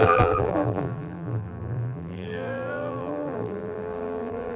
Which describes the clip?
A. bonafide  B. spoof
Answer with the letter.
B